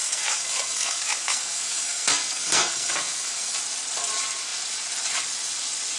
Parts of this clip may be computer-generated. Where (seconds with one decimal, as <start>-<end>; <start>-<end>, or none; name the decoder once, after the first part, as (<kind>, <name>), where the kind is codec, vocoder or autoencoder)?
0.0-3.6 (codec, SNAC)